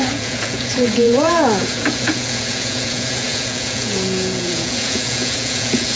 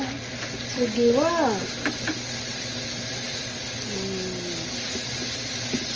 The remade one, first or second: first